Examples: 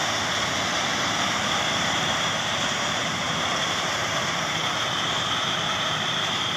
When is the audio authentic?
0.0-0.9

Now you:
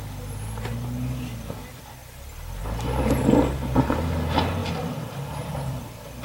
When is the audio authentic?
0.0-4.6; 5.8-6.2

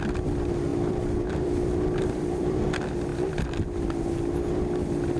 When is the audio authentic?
0.0-0.7; 2.6-5.2

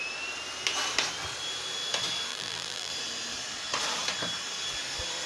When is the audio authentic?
0.0-2.3; 2.9-5.3

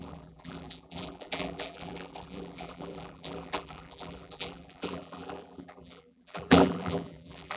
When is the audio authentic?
none

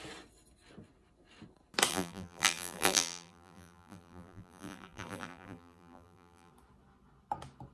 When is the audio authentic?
0.0-1.9; 6.5-7.7

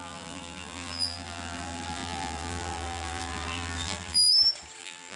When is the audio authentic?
4.3-4.8